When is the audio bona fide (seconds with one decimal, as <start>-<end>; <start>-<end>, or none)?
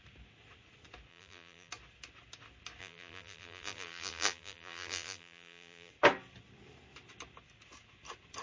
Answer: 0.0-1.1; 1.7-2.8; 5.9-8.4